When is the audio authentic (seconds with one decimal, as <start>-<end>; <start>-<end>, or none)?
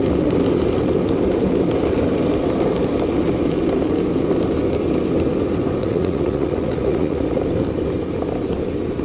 0.0-5.8; 7.4-9.0